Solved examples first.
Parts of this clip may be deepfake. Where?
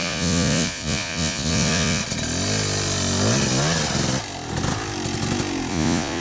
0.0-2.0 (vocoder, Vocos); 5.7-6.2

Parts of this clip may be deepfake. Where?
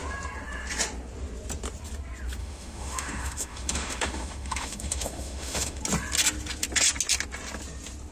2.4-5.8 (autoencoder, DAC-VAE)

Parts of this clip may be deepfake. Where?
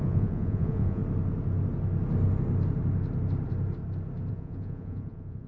0.0-1.0 (vocoder, Vocos); 4.3-5.5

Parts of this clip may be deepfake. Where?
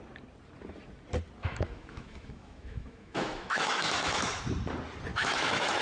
1.4-4.4 (autoencoder, DAC-VAE); 5.1-5.8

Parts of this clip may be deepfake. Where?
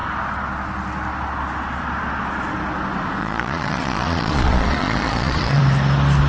3.2-5.6 (vocoder, Vocos)